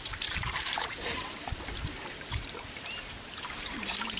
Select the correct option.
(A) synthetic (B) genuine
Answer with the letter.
A